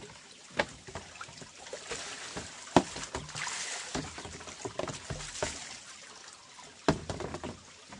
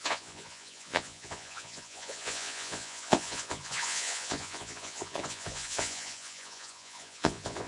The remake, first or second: second